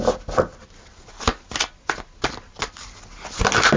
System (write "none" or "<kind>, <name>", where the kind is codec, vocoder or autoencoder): none